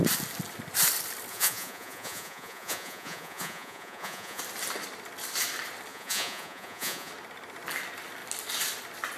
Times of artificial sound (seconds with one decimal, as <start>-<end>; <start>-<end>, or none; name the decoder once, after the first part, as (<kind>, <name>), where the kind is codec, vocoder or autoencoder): 1.3-4.4 (vocoder, Vocos); 5.9-7.1